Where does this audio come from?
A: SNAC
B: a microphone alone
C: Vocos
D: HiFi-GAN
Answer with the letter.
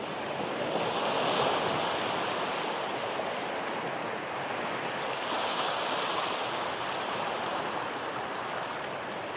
B